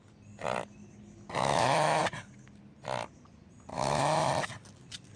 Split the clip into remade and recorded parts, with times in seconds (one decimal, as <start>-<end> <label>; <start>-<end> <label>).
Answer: 0.0-1.4 recorded; 1.4-2.0 remade; 2.0-3.7 recorded; 3.7-4.3 remade; 4.3-5.2 recorded